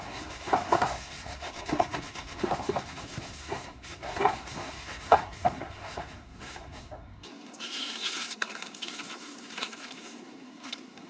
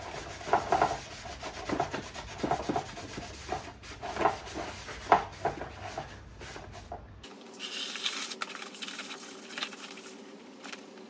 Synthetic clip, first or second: first